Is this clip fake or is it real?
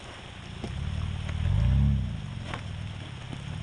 real